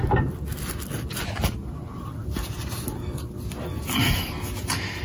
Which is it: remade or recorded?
recorded